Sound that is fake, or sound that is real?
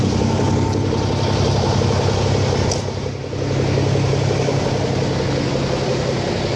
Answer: real